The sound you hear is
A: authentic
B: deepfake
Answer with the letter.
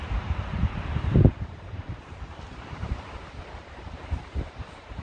B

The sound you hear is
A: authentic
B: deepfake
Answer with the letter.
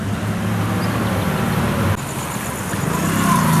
A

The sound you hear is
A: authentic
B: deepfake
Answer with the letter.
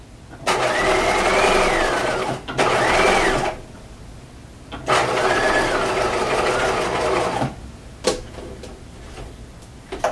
A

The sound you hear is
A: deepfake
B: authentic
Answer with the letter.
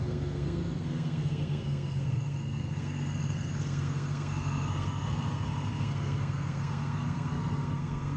A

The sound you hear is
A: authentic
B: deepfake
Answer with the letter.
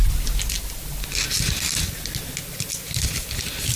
A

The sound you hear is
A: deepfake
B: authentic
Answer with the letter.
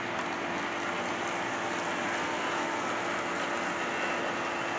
B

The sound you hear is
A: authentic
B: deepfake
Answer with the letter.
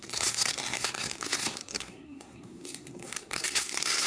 B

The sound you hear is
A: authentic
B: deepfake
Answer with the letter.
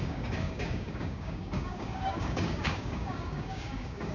B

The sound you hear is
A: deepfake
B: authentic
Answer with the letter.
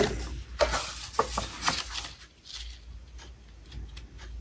B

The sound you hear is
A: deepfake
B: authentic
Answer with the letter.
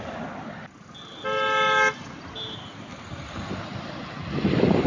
B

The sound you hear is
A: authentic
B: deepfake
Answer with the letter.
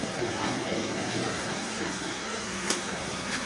B